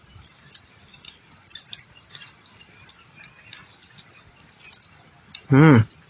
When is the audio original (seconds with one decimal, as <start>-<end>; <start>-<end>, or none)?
0.0-6.1